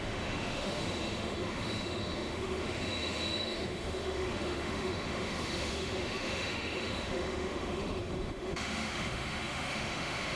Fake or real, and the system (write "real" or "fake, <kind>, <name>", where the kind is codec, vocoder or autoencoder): fake, autoencoder, DAC-VAE